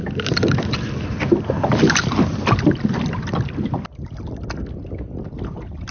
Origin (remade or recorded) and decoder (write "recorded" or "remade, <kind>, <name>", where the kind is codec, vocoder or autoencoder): recorded